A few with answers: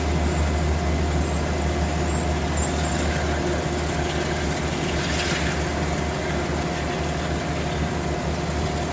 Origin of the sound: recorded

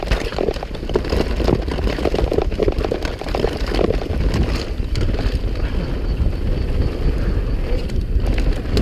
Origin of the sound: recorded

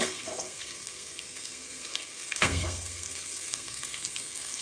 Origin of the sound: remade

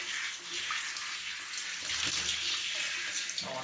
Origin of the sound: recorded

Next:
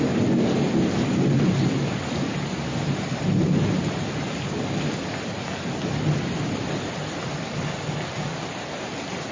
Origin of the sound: recorded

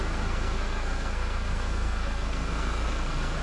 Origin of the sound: remade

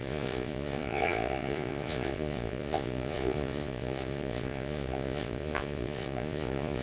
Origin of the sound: remade